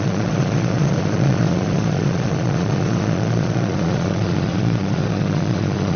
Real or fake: fake